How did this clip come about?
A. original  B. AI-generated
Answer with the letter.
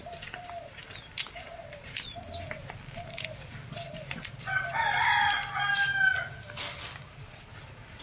A